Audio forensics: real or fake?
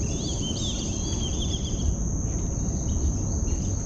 real